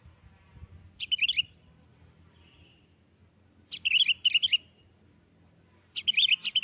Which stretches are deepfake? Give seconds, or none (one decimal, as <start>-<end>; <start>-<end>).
none

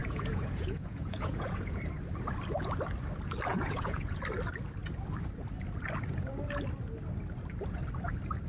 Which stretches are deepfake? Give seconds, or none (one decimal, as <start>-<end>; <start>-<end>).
0.0-1.8; 3.5-4.2